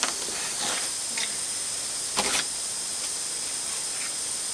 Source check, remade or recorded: recorded